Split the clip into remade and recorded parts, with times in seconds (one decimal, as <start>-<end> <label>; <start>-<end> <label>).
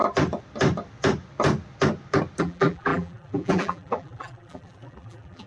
0.0-2.4 recorded; 2.4-5.5 remade